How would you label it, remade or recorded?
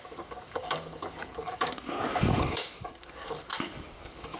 remade